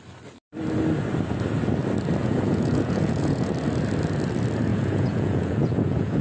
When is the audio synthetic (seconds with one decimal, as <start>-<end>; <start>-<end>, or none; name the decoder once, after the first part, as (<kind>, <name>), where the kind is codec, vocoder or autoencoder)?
2.2-3.5 (vocoder, Vocos); 4.7-6.2